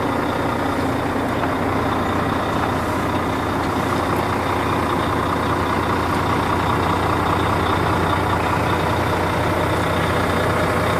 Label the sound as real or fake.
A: real